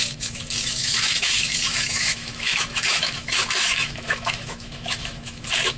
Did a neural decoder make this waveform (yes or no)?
yes